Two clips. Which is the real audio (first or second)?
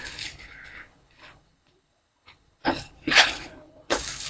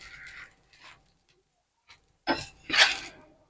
second